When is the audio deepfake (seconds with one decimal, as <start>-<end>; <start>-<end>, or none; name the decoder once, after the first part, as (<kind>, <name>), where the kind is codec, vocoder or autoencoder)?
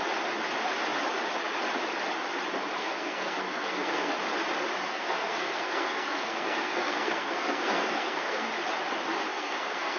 2.8-4.1 (codec, SNAC); 4.9-8.5; 9.3-10.0